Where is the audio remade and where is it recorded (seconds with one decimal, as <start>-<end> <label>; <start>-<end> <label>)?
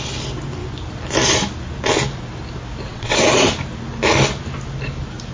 0.0-2.9 recorded; 2.9-3.5 remade; 3.5-5.3 recorded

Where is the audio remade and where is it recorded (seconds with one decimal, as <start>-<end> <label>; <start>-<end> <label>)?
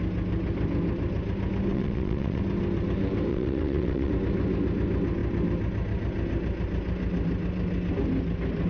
0.0-1.7 recorded; 1.7-2.4 remade; 2.4-3.3 recorded; 3.3-4.1 remade; 4.1-8.7 recorded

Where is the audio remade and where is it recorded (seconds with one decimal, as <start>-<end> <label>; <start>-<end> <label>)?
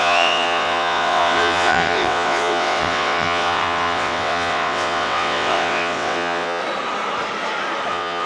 0.0-6.6 remade; 6.6-7.9 recorded; 7.9-8.3 remade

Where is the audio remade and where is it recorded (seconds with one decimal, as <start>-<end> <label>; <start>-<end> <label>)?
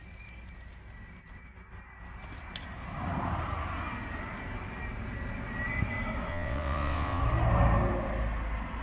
0.0-6.3 recorded; 6.3-7.2 remade; 7.2-8.8 recorded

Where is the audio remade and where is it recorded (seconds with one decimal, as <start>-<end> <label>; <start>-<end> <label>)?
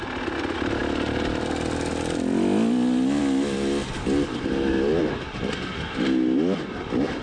0.0-7.2 recorded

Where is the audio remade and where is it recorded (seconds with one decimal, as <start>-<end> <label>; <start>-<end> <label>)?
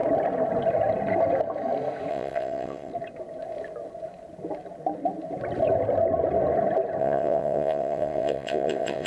0.0-2.1 recorded; 2.1-2.9 remade; 2.9-7.0 recorded; 7.0-9.1 remade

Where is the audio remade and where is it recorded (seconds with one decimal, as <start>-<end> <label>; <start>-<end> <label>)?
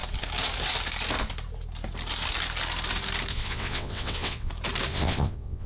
0.0-3.3 recorded; 3.3-4.5 remade; 4.5-4.9 recorded; 4.9-5.7 remade